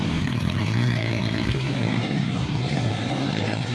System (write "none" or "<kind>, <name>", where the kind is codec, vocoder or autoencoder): codec, SNAC